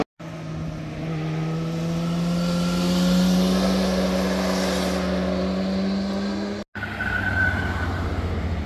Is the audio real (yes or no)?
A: yes